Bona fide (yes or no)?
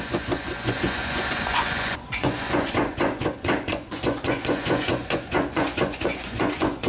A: no